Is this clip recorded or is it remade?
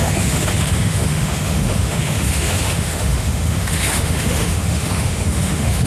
remade